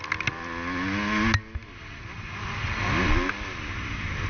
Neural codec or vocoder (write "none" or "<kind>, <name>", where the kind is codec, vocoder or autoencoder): none